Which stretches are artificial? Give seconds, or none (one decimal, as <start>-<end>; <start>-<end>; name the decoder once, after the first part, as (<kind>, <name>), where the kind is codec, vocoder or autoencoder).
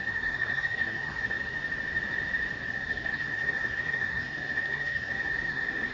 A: 0.0-1.6 (codec, SNAC); 2.7-5.9